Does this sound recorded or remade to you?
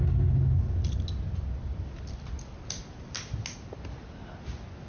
recorded